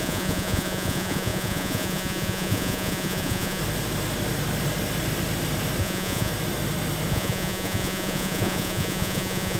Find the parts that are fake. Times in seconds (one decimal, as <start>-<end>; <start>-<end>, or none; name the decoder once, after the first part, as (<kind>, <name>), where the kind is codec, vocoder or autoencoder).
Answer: 0.0-3.6 (vocoder, Vocos); 5.8-6.3; 7.1-9.6

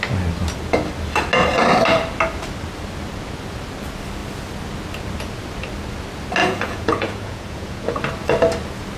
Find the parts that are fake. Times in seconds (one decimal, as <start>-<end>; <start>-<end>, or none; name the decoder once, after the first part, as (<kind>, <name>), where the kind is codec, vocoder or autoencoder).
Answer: 6.4-8.0 (vocoder, Vocos)

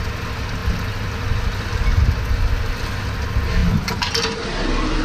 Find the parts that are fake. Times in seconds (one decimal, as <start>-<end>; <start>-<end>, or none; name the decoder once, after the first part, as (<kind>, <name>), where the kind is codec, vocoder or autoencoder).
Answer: none